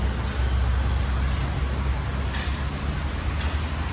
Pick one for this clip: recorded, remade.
recorded